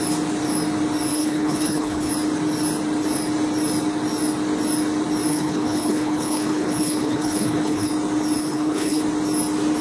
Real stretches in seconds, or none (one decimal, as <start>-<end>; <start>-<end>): 0.0-1.1; 2.1-5.3; 7.9-8.4; 9.0-9.8